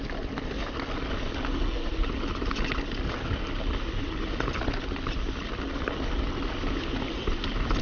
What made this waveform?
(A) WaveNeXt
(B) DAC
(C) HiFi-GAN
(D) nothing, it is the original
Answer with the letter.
D